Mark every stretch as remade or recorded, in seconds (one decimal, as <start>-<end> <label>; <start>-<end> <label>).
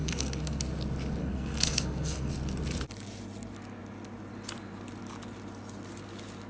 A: 0.0-0.6 remade; 0.6-1.2 recorded; 1.2-2.3 remade; 2.3-6.5 recorded